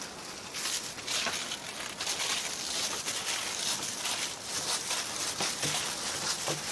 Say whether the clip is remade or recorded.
recorded